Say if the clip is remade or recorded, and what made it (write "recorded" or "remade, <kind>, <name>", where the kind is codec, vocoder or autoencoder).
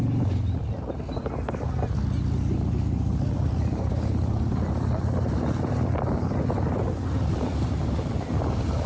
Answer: recorded